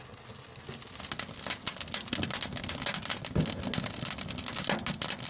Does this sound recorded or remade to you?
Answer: recorded